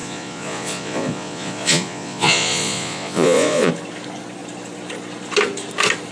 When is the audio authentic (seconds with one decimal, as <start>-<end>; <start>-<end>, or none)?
3.7-6.1